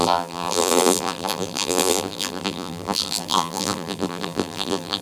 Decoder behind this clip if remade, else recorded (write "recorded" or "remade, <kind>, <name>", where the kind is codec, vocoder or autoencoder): remade, vocoder, BigVGAN v2